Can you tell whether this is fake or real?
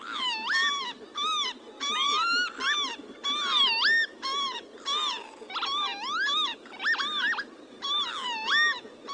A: real